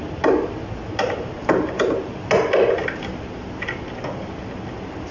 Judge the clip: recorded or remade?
recorded